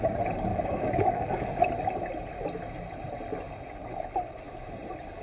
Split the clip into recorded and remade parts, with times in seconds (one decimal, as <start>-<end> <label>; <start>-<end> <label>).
0.0-0.5 recorded; 0.5-1.7 remade; 1.7-5.2 recorded